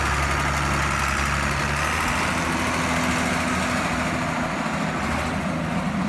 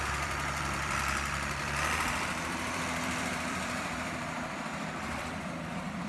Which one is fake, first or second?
second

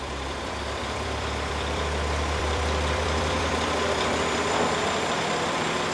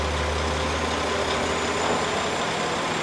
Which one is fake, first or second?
first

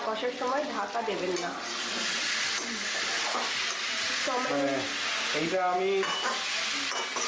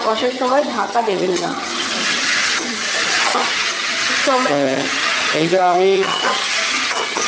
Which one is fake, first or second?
second